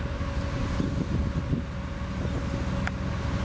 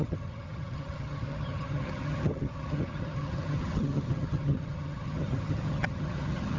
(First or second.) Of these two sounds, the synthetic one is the second